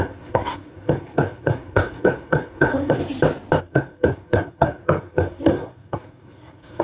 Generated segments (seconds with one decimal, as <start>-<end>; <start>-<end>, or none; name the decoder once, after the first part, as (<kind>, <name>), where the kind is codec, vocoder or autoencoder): 0.0-3.0 (codec, SNAC); 3.6-6.8